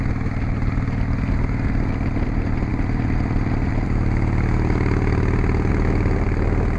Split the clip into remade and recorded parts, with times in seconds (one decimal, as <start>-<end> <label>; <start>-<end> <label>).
0.0-6.8 recorded